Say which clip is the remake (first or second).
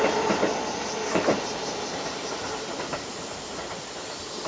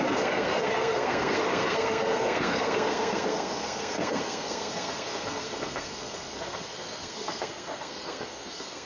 second